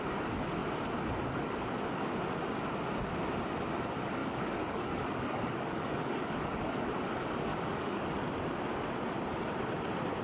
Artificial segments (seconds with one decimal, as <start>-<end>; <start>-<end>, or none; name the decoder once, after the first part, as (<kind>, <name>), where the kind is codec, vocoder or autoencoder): 4.2-6.9 (codec, DAC); 7.5-8.0